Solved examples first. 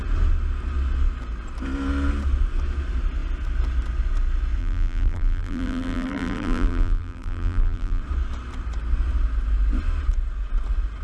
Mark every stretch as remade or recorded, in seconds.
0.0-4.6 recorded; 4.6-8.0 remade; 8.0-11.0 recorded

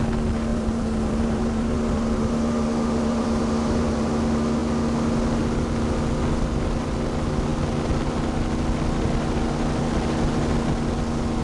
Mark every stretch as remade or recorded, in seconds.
0.0-0.5 recorded; 0.5-4.1 remade; 4.1-11.4 recorded

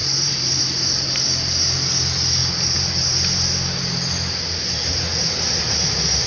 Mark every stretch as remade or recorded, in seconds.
0.0-0.6 remade; 0.6-6.3 recorded

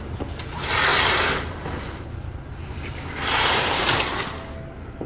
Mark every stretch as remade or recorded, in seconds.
0.0-5.1 recorded

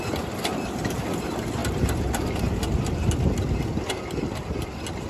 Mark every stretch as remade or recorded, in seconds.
0.0-1.6 remade; 1.6-5.1 recorded

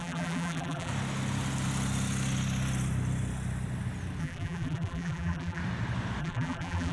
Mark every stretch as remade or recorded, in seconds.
0.0-0.9 remade; 0.9-4.2 recorded; 4.2-5.6 remade; 5.6-6.2 recorded; 6.2-6.9 remade